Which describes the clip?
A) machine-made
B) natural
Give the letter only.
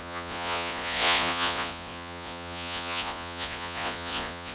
A